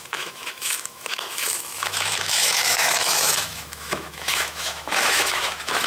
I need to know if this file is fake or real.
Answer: fake